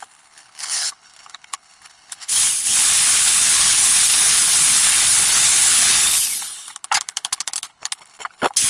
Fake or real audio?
fake